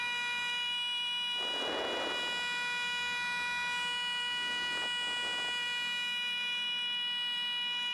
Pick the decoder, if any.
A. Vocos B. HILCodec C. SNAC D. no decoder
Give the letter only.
D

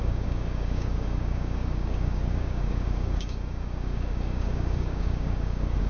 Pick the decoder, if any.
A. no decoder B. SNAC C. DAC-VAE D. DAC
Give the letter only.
D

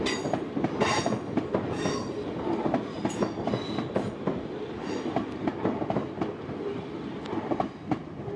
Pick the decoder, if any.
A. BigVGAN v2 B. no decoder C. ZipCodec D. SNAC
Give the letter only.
B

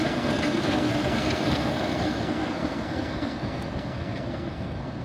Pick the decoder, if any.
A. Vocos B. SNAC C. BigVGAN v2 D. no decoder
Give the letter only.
B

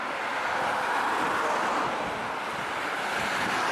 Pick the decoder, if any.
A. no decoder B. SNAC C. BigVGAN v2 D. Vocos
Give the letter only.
A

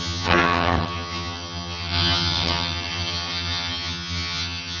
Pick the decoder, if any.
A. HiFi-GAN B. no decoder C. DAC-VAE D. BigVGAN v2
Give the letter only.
A